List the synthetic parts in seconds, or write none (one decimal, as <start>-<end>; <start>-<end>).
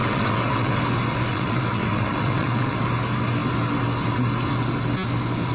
0.0-0.7; 1.3-2.8